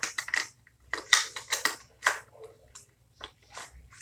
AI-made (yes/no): yes